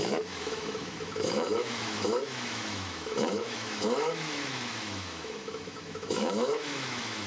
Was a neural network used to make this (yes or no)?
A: yes